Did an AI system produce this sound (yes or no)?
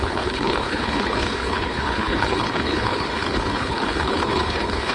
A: yes